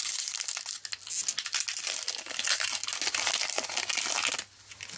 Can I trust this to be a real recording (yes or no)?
yes